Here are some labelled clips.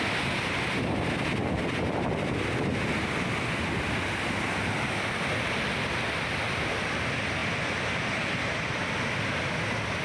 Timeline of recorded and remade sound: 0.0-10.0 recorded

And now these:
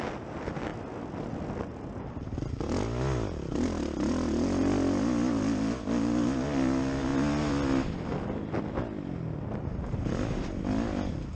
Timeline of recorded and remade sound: 0.0-11.3 recorded

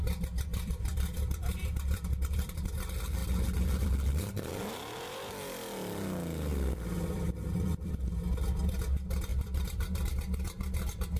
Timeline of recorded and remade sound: 0.0-0.5 recorded; 0.5-2.7 remade; 2.7-3.2 recorded; 3.2-5.3 remade; 5.3-6.5 recorded; 6.5-7.9 remade; 7.9-9.3 recorded; 9.3-10.1 remade; 10.1-11.2 recorded

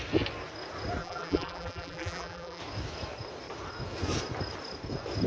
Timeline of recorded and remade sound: 0.0-1.0 recorded; 1.0-2.6 remade; 2.6-5.3 recorded

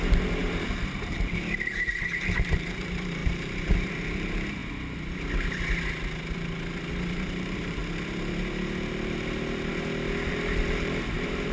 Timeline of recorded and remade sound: 0.0-4.6 remade; 4.6-6.9 recorded; 6.9-7.8 remade; 7.8-10.3 recorded; 10.3-11.5 remade

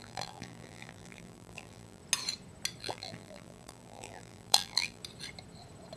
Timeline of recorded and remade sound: 0.0-2.0 remade; 2.0-2.8 recorded; 2.8-5.0 remade; 5.0-6.0 recorded